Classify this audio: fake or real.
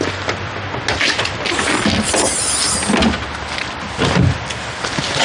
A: real